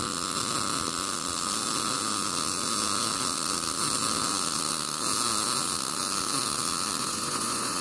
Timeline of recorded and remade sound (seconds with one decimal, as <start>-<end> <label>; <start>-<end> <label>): 0.0-7.0 recorded; 7.0-7.8 remade